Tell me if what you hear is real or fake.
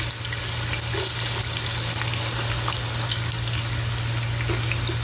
real